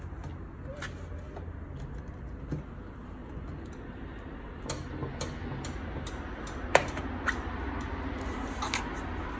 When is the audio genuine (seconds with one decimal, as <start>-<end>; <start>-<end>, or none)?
0.0-9.4